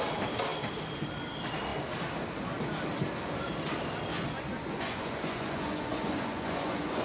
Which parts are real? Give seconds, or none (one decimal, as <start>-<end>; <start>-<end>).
0.0-4.1